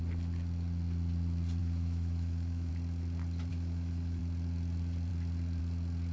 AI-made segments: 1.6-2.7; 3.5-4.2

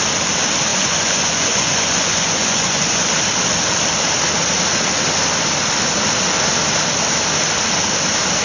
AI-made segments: 0.7-3.1